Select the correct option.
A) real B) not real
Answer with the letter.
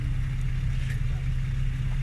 A